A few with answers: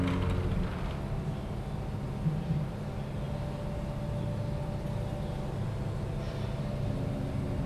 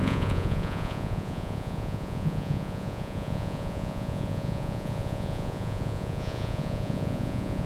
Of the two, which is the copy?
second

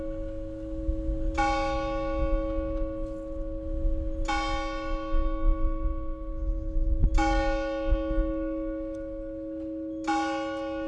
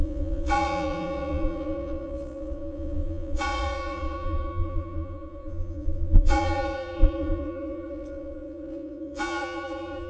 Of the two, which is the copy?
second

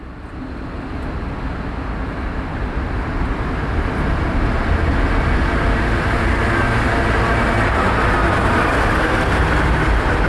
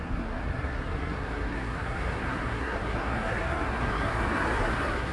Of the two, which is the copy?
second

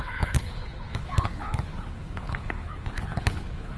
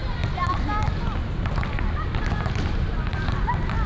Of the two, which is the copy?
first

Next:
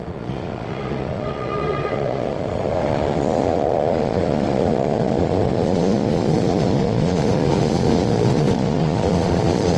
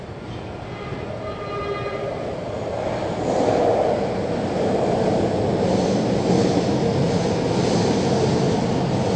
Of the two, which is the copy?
first